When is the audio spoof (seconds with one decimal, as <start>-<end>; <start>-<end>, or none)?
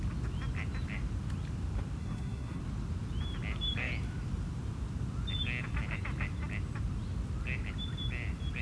2.0-2.6